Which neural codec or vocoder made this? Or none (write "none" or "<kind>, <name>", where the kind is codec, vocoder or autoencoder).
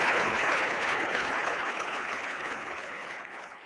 codec, HILCodec